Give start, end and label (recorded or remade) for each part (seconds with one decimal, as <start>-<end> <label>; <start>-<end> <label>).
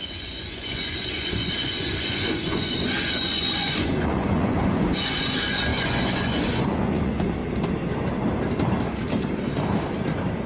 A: 0.0-7.4 remade; 7.4-10.5 recorded